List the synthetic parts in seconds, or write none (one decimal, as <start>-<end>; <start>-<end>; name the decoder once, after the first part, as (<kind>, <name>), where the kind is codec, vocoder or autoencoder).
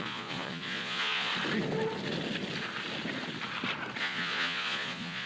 0.0-1.3 (vocoder, Vocos); 4.0-5.3